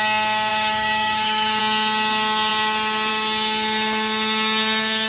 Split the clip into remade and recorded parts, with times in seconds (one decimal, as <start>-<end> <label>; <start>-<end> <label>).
0.0-0.5 recorded; 0.5-1.6 remade; 1.6-5.1 recorded